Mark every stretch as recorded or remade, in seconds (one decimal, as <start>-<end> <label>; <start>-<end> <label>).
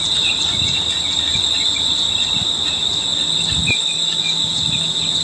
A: 0.0-5.2 recorded